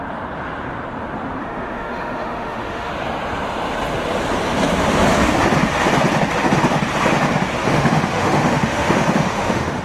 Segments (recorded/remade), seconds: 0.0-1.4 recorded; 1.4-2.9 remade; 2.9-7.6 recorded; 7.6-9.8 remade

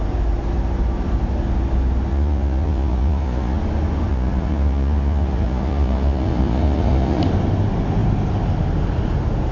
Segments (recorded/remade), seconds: 0.0-2.1 recorded; 2.1-3.6 remade; 3.6-4.1 recorded; 4.1-7.2 remade; 7.2-9.5 recorded

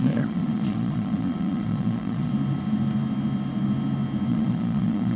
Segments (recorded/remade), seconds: 0.0-2.3 remade; 2.3-4.3 recorded; 4.3-5.2 remade

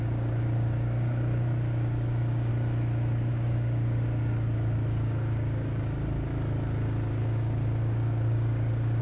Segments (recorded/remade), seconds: 0.0-2.5 remade; 2.5-3.3 recorded; 3.3-6.3 remade; 6.3-7.1 recorded; 7.1-9.0 remade

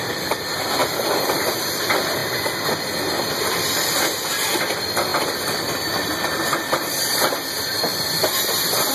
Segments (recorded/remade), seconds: 0.0-2.2 remade; 2.2-3.2 recorded; 3.2-8.9 remade

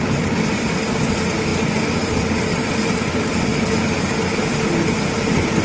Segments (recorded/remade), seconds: 0.0-5.6 recorded

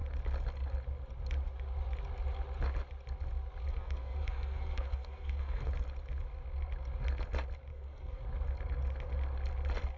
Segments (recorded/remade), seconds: 0.0-3.7 recorded; 3.7-5.7 remade; 5.7-7.7 recorded; 7.7-8.2 remade; 8.2-10.0 recorded